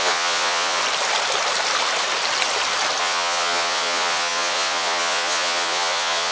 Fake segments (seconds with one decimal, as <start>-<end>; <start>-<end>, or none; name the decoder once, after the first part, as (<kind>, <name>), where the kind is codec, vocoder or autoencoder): 0.0-0.8 (vocoder, Vocos); 3.0-6.3